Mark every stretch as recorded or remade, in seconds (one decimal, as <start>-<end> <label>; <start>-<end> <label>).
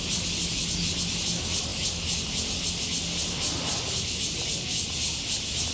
0.0-5.7 recorded